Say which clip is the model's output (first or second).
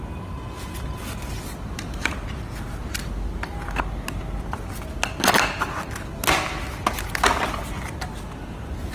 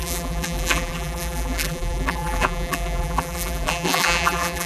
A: second